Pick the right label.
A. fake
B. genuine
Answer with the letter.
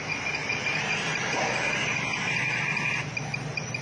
B